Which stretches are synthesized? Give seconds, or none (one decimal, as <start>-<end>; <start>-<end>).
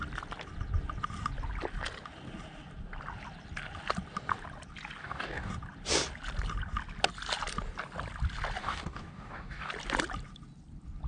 5.0-5.5; 8.6-9.7